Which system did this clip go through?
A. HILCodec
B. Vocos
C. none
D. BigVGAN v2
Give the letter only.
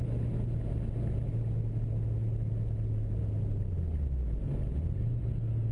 C